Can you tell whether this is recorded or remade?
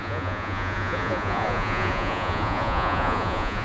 remade